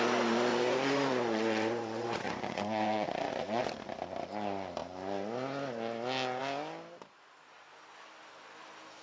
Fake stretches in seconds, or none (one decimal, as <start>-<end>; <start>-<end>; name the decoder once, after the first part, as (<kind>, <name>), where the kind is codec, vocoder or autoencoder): 0.5-3.6 (vocoder, Vocos)